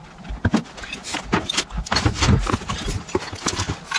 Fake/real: real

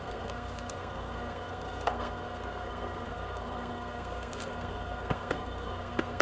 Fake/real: fake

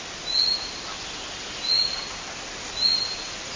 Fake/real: real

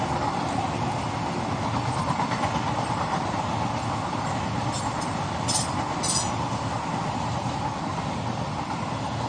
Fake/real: real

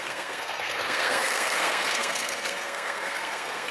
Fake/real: fake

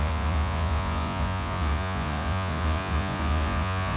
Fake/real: fake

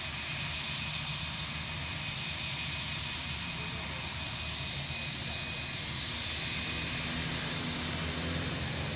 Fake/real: real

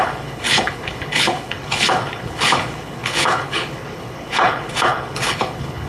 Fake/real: fake